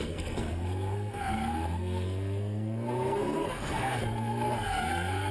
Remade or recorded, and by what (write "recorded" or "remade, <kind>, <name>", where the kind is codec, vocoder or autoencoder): remade, codec, SNAC